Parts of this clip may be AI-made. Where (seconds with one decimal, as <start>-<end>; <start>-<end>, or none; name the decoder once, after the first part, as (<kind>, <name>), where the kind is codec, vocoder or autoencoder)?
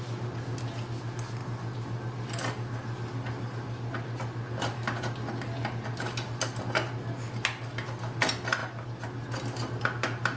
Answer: none